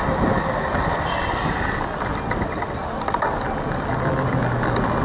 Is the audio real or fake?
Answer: real